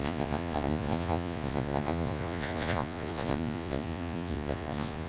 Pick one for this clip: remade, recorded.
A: remade